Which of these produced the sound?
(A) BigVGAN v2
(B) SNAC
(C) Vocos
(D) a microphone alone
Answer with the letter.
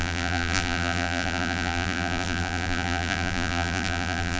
A